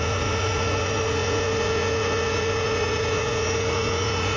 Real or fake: fake